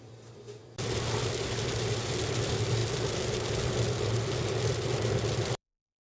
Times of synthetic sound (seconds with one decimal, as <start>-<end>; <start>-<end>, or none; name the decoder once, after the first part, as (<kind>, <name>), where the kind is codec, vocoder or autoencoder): 0.0-2.8 (vocoder, BigVGAN v2); 3.7-6.0